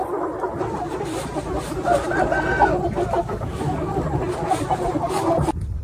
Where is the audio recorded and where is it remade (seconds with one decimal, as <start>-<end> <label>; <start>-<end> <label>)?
0.0-3.2 recorded; 3.2-3.9 remade; 3.9-5.8 recorded